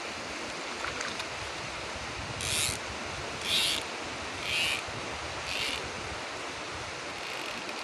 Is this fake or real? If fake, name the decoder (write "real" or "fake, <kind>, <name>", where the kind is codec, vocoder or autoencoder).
real